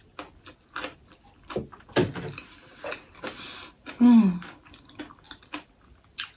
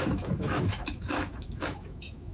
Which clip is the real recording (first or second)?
first